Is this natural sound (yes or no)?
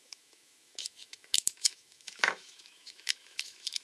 no